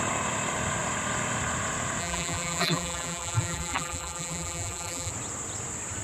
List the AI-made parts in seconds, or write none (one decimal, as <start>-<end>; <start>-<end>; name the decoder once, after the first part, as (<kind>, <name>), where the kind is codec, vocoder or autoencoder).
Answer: 2.0-5.1 (vocoder, BigVGAN v2)